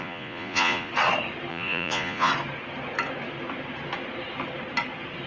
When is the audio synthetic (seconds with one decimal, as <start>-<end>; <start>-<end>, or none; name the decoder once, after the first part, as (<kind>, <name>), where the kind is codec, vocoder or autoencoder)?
0.0-0.9 (vocoder, Vocos); 1.5-2.3